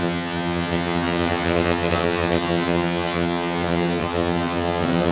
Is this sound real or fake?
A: fake